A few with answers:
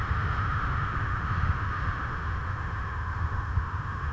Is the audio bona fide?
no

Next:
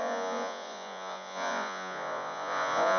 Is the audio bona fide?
no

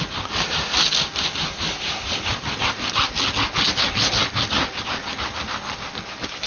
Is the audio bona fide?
yes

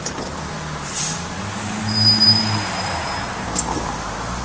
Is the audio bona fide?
yes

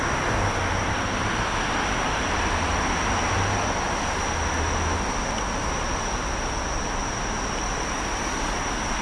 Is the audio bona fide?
yes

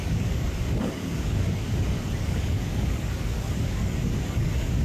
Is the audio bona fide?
no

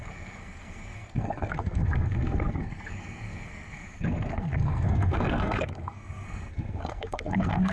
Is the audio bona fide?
no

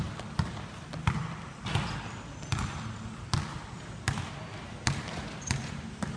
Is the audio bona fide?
yes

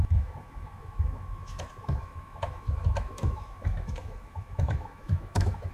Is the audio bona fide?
no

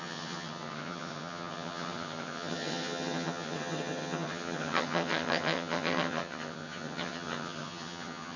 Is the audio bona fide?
no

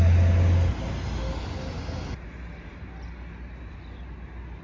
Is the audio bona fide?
yes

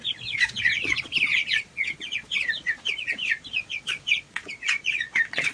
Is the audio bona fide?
no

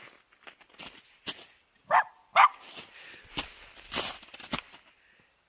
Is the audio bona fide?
yes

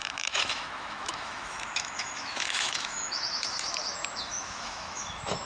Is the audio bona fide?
no